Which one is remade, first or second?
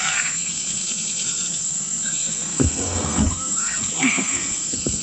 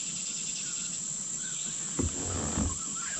first